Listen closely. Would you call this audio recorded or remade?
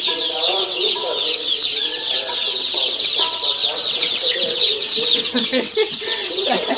remade